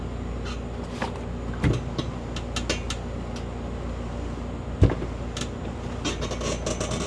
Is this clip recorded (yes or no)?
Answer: yes